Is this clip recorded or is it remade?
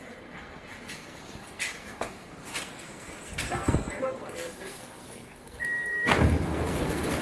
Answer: remade